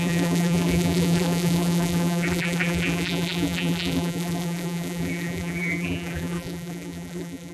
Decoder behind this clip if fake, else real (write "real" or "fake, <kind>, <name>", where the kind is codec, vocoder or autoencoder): fake, vocoder, BigVGAN v2